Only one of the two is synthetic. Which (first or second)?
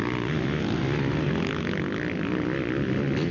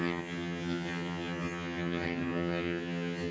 second